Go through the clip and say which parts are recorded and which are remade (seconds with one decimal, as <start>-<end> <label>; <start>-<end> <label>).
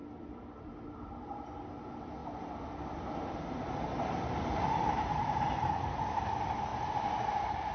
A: 0.0-0.6 recorded; 0.6-2.2 remade; 2.2-4.6 recorded; 4.6-6.7 remade; 6.7-7.3 recorded; 7.3-7.7 remade